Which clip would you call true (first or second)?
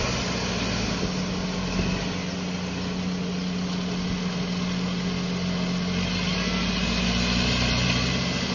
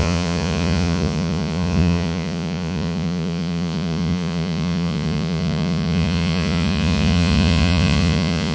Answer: first